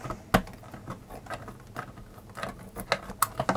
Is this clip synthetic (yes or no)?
no